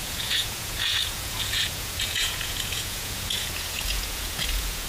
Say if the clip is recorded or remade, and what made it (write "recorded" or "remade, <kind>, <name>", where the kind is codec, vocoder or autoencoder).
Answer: remade, vocoder, Vocos